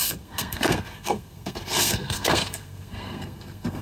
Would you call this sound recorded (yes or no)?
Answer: no